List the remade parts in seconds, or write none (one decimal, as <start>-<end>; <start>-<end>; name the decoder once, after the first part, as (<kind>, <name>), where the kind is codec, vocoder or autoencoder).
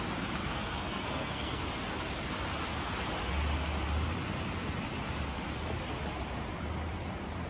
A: 0.4-1.6 (codec, SNAC)